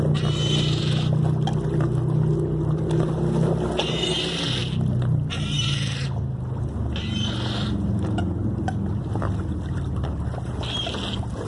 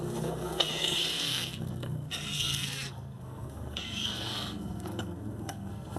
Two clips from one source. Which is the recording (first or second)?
first